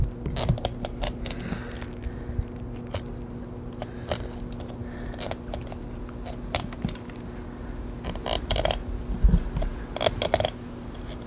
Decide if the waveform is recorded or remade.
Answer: recorded